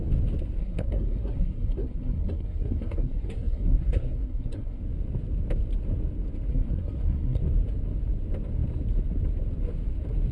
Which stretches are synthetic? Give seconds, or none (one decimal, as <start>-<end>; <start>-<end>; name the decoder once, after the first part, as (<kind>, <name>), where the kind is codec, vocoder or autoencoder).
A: 0.6-4.8 (codec, SNAC); 6.5-7.4